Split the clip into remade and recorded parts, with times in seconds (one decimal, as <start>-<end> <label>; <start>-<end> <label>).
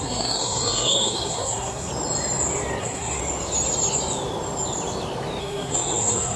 0.0-1.9 remade; 1.9-2.8 recorded; 2.8-3.2 remade; 3.2-5.4 recorded; 5.4-6.4 remade